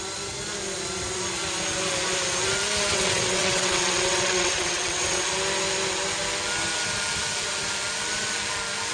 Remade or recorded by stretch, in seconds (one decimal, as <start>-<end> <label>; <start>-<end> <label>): 0.0-2.9 recorded; 2.9-5.2 remade; 5.2-8.9 recorded

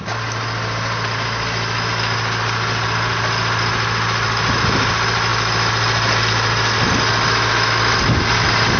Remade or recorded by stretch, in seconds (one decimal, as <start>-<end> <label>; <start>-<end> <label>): 0.0-8.8 recorded

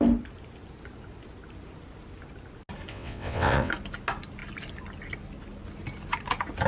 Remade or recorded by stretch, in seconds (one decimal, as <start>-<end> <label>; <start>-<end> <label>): 0.0-2.9 recorded; 2.9-3.7 remade; 3.7-6.7 recorded

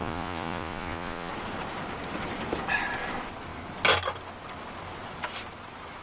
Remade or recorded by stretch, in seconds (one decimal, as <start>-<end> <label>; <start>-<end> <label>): 0.0-1.3 remade; 1.3-6.0 recorded

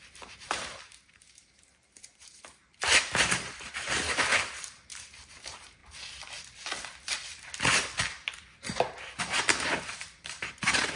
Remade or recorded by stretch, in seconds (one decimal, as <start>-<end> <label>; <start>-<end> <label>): 0.0-5.8 remade; 5.8-9.2 recorded; 9.2-11.0 remade

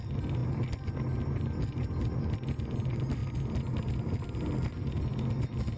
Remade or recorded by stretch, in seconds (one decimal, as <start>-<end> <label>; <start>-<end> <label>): 0.0-5.8 recorded

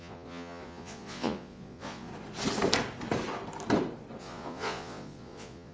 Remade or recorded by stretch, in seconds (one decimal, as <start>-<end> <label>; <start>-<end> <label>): 0.0-2.1 remade; 2.1-4.2 recorded; 4.2-5.7 remade